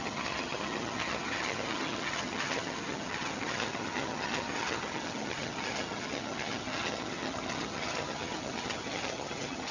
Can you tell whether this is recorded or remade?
remade